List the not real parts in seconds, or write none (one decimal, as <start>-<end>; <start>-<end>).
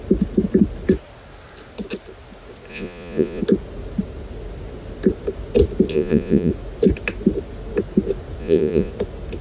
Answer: 2.7-3.4; 5.9-6.5; 8.4-8.9